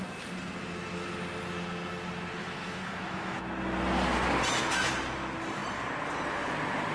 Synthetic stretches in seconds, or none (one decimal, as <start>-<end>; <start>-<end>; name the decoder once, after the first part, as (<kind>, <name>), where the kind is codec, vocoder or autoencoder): 2.4-3.5 (autoencoder, DAC-VAE)